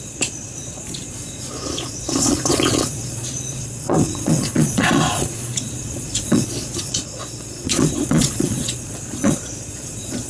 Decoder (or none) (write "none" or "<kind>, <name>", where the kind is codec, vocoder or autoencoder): vocoder, Vocos